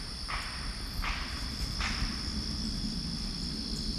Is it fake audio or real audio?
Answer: real